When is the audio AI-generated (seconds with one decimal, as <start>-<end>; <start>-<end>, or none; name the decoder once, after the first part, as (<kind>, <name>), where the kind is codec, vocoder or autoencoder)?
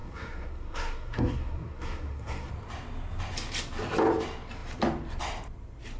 0.0-2.5 (codec, SNAC)